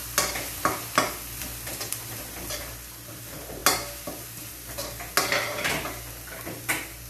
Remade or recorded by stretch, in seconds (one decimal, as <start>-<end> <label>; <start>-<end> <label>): 0.0-7.1 recorded